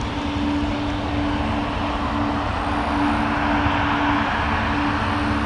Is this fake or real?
real